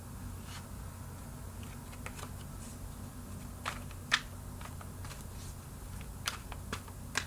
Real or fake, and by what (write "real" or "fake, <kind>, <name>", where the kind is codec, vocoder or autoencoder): real